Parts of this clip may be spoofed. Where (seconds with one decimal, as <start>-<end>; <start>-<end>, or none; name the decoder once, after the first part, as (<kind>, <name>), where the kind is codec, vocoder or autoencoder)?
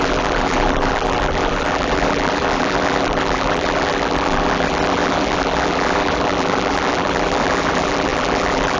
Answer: 0.0-8.8 (vocoder, BigVGAN v2)